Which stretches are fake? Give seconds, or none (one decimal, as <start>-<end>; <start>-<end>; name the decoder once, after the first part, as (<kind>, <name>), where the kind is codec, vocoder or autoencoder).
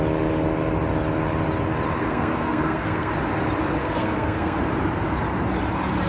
2.0-3.1 (codec, SNAC); 3.8-4.6